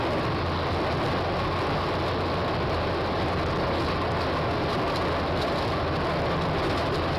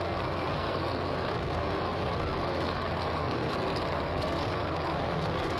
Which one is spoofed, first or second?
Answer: second